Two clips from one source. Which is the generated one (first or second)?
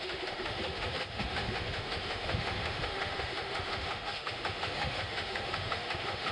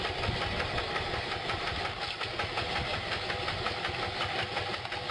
first